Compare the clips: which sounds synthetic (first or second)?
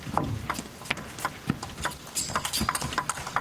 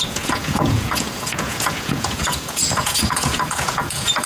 second